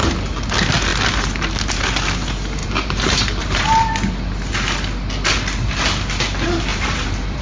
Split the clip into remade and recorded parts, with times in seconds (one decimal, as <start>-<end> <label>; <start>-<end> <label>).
0.0-2.6 recorded; 2.6-3.6 remade; 3.6-6.7 recorded; 6.7-7.4 remade